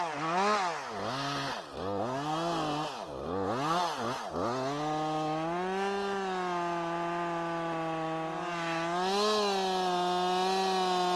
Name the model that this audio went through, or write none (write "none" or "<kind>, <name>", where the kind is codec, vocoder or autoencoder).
none